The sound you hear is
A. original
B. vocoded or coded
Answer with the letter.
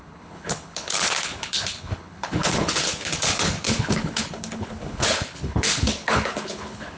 B